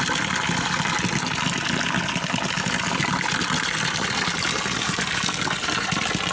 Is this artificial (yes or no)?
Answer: no